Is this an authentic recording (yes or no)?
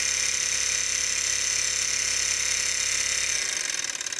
yes